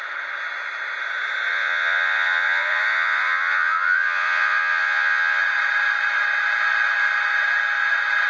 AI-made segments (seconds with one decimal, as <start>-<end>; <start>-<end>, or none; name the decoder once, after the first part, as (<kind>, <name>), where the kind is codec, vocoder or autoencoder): 1.5-5.4 (vocoder, Vocos)